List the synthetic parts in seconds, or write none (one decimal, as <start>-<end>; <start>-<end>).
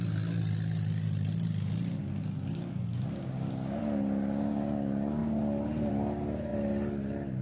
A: 2.0-3.8